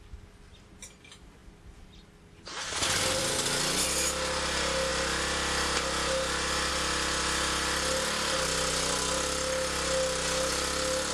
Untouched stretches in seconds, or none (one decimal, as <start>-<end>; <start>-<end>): 0.0-11.1